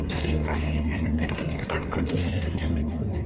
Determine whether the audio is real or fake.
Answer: fake